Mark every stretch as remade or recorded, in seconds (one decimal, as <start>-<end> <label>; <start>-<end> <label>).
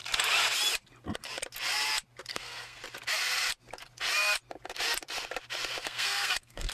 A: 0.0-2.3 recorded; 2.3-2.8 remade; 2.8-5.8 recorded; 5.8-6.7 remade